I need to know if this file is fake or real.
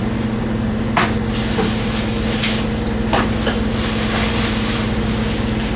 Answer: real